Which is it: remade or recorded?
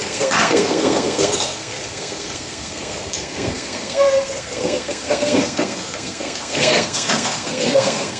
remade